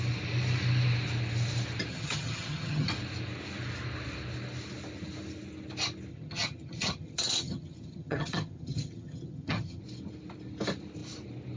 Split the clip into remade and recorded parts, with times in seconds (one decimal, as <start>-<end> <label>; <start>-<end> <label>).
0.0-1.9 recorded; 1.9-2.9 remade; 2.9-6.1 recorded; 6.1-9.8 remade; 9.8-11.6 recorded